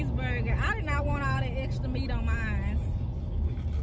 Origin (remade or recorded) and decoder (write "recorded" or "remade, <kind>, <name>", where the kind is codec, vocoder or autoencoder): recorded